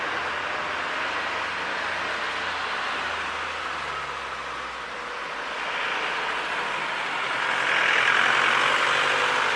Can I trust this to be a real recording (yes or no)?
yes